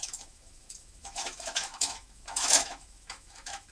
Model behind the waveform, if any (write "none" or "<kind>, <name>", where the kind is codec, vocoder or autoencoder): autoencoder, DAC-VAE